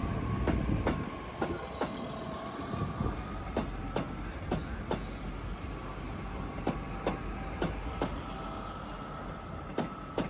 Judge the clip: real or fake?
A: real